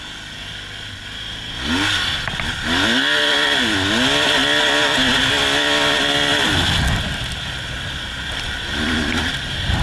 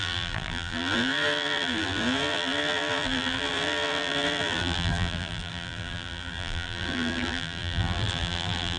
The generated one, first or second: second